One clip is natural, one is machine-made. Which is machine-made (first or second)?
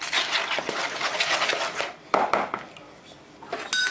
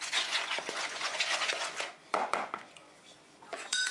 second